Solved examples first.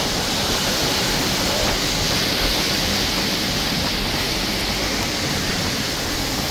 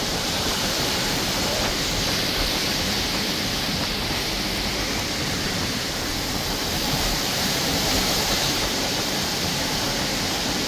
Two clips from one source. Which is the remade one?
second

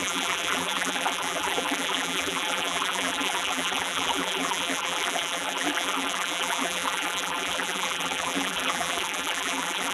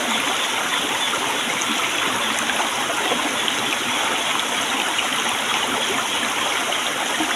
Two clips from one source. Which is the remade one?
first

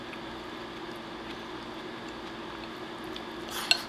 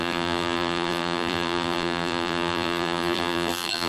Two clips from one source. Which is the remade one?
second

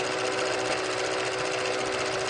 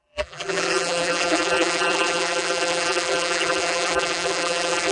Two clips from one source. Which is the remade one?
second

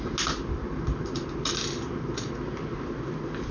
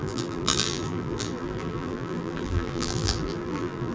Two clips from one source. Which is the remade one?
second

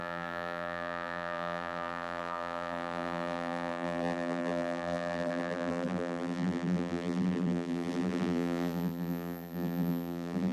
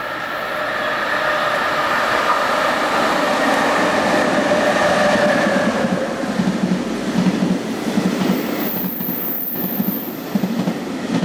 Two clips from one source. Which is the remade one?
first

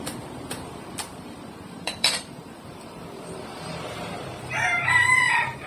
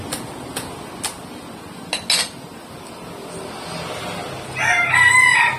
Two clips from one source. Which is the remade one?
first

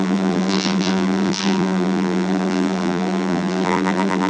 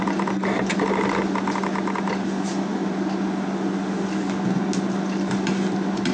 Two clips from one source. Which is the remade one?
first